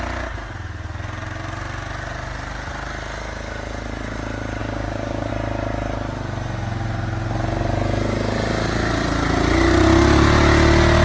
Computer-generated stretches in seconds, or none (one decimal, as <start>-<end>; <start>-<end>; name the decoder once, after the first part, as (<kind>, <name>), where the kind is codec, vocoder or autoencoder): 4.6-5.3 (codec, DAC)